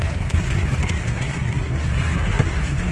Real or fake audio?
fake